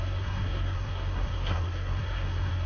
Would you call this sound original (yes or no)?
no